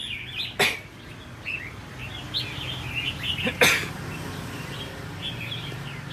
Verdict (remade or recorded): recorded